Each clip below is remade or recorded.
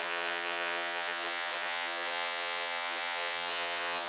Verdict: remade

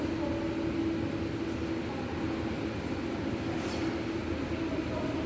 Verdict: recorded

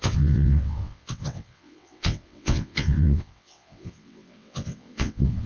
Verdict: remade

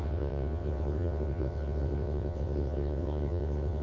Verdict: remade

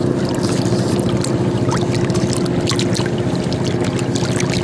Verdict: recorded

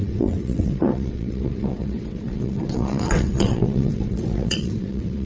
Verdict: remade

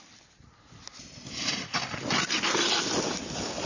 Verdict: recorded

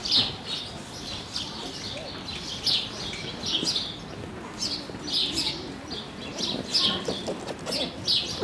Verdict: recorded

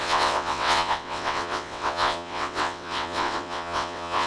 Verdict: remade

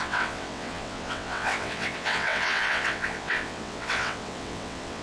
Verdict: remade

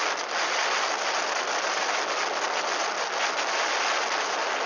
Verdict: recorded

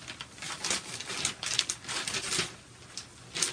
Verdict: recorded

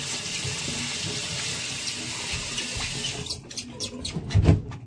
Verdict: recorded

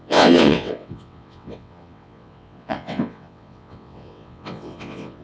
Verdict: remade